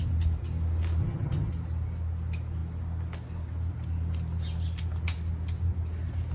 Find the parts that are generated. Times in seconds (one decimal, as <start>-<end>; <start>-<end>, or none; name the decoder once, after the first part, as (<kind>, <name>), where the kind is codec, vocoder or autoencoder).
1.0-1.5 (vocoder, HiFi-GAN)